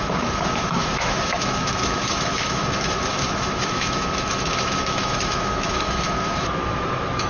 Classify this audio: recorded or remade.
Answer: remade